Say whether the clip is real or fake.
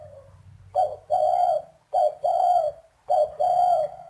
real